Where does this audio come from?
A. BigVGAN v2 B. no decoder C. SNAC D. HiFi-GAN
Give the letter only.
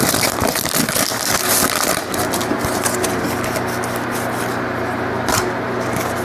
A